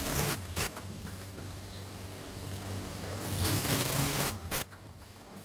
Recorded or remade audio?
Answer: remade